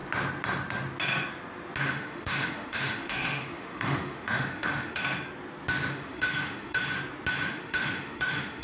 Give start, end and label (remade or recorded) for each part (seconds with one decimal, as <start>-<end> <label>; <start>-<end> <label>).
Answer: 0.0-1.8 recorded; 1.8-5.0 remade; 5.0-5.9 recorded; 5.9-6.8 remade; 6.8-7.5 recorded; 7.5-8.6 remade